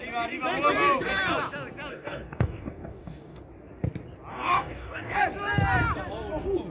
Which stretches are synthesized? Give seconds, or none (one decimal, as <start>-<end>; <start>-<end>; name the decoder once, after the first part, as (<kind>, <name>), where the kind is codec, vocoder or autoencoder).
1.9-3.4 (codec, DAC); 4.3-5.2